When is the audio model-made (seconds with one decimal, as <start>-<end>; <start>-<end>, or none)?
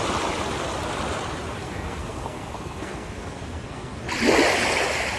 1.6-4.0